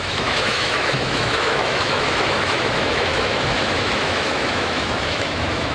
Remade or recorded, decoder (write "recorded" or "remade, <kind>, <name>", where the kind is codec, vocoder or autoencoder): remade, autoencoder, DAC-VAE